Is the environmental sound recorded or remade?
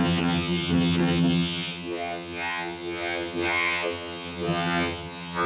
remade